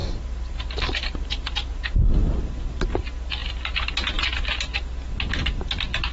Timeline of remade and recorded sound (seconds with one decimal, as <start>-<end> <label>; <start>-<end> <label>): 0.0-6.1 recorded